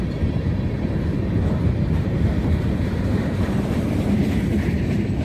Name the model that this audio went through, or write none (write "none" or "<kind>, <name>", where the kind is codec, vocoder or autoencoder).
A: vocoder, BigVGAN v2